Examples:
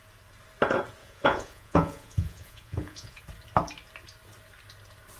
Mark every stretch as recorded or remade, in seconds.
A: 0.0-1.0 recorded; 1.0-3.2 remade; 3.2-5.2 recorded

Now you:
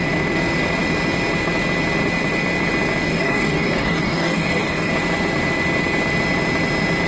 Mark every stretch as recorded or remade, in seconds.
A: 0.0-3.1 recorded; 3.1-4.9 remade; 4.9-7.1 recorded

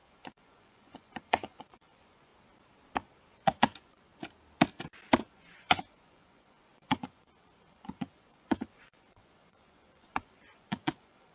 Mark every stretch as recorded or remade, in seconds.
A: 0.0-2.3 remade; 2.3-3.3 recorded; 3.3-4.1 remade; 4.1-5.2 recorded; 5.2-11.3 remade

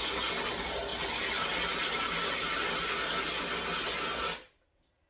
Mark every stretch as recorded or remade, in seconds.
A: 0.0-5.1 recorded

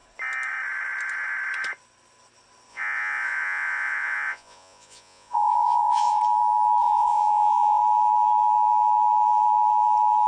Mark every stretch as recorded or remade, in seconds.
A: 0.0-2.7 recorded; 2.7-6.2 remade; 6.2-6.8 recorded; 6.8-7.8 remade; 7.8-10.3 recorded

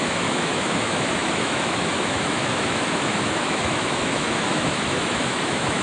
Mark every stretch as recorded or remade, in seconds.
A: 0.0-5.8 remade

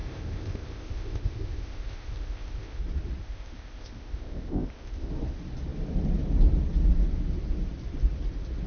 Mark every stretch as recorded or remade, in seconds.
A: 0.0-2.8 remade; 2.8-3.2 recorded; 3.2-5.1 remade; 5.1-8.7 recorded